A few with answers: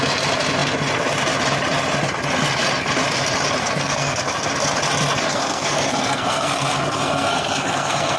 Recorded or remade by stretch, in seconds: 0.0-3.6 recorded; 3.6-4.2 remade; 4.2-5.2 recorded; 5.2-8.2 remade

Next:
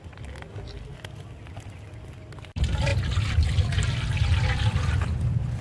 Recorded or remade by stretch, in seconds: 0.0-5.6 recorded

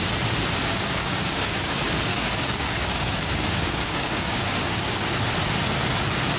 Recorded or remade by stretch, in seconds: 0.0-0.6 recorded; 0.6-1.7 remade; 1.7-2.1 recorded; 2.1-5.2 remade; 5.2-6.4 recorded

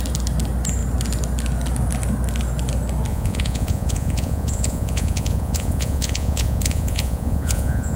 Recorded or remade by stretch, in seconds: 0.0-3.1 recorded; 3.1-8.0 remade

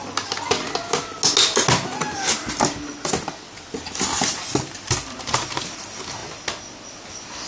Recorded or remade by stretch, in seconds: 0.0-7.5 recorded

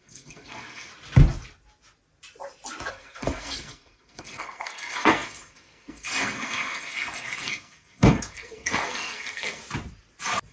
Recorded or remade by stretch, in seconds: 0.0-0.9 remade; 0.9-2.9 recorded; 2.9-9.6 remade; 9.6-10.5 recorded

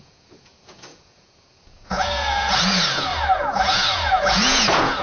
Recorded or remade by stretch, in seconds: 0.0-5.0 remade

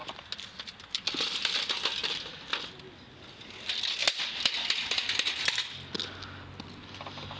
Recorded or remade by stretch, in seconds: 0.0-7.4 recorded